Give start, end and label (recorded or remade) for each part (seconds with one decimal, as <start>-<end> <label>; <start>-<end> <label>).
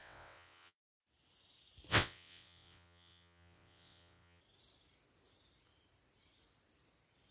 0.0-0.8 remade; 0.8-1.9 recorded; 1.9-4.4 remade; 4.4-7.3 recorded